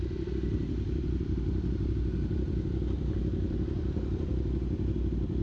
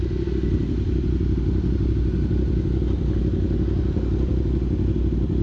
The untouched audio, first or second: second